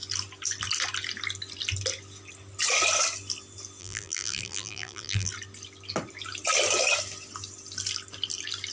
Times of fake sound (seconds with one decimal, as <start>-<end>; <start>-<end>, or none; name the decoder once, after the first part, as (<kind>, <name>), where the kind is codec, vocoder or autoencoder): 3.8-5.3 (vocoder, BigVGAN v2)